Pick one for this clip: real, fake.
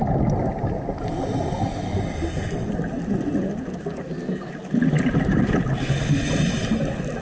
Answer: real